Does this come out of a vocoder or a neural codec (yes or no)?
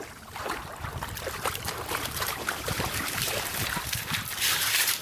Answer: yes